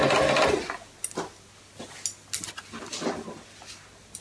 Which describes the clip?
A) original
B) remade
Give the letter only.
A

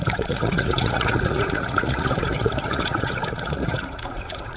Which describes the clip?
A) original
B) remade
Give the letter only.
B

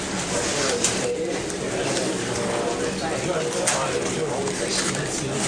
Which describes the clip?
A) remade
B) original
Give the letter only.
B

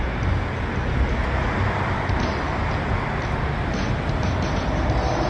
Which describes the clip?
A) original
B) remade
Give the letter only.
A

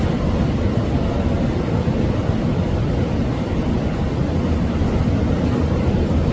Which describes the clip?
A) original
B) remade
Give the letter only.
A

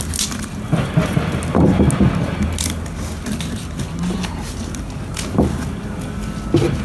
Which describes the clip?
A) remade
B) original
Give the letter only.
B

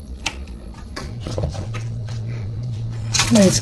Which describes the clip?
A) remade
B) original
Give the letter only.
A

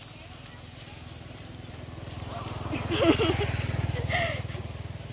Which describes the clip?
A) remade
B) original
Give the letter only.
B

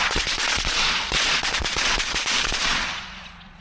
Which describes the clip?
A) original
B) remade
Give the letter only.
B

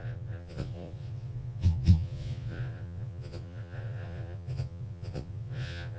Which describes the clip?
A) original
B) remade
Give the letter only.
B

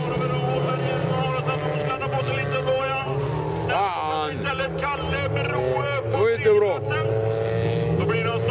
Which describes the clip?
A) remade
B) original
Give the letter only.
B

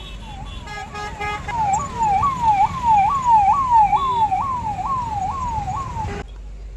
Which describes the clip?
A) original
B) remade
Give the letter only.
A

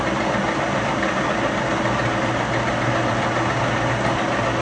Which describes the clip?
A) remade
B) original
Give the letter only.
B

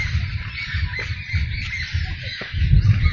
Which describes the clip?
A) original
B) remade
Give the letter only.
A